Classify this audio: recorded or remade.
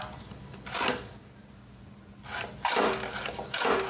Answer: recorded